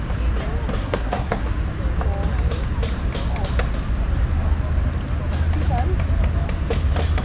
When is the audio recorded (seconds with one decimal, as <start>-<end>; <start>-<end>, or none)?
0.0-0.8; 1.4-7.2